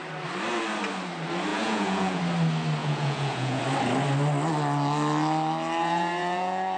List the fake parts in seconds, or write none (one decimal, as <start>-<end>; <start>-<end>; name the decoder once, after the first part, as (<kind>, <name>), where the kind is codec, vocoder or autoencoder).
1.5-2.2 (vocoder, Vocos); 2.8-3.6; 5.8-6.8